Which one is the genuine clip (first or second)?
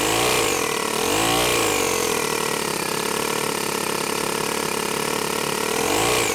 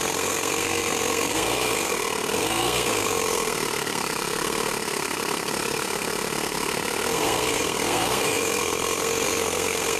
first